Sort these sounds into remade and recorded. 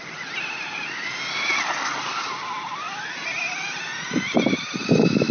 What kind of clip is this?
recorded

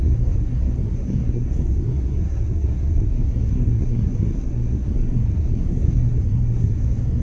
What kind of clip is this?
remade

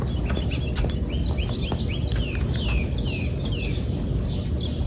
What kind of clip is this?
recorded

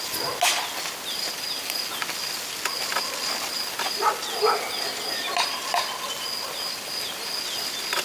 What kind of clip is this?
recorded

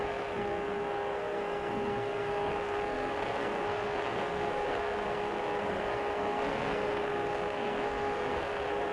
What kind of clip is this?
remade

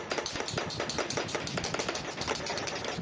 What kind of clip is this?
recorded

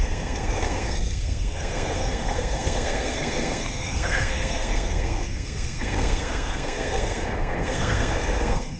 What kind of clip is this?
remade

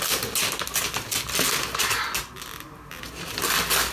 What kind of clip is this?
recorded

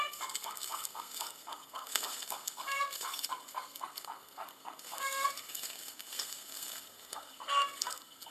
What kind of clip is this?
remade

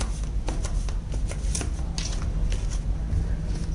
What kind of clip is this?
recorded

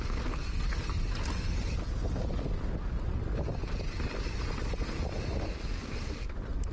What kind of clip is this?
recorded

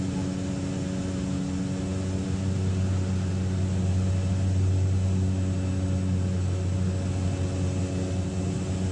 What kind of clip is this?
recorded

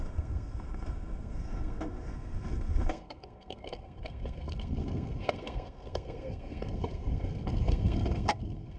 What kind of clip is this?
remade